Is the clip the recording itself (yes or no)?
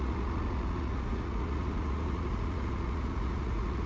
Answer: no